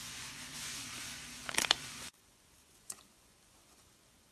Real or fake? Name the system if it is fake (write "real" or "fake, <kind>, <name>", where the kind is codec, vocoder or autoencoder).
fake, vocoder, Vocos